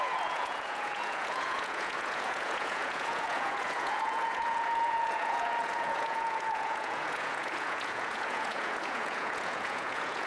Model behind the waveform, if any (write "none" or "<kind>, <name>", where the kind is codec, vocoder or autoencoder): vocoder, Vocos